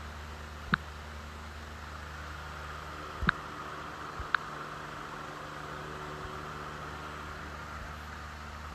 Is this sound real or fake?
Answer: real